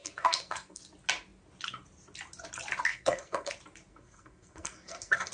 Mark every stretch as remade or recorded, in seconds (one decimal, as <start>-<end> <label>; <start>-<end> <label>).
0.0-0.8 remade; 0.8-2.9 recorded; 2.9-3.5 remade; 3.5-3.9 recorded; 3.9-5.3 remade